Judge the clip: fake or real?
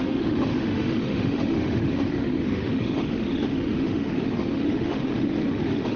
fake